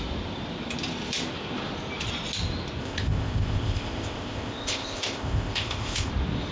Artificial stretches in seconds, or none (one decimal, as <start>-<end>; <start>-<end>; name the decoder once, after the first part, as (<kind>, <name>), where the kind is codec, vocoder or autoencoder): 2.8-6.1 (codec, ZipCodec)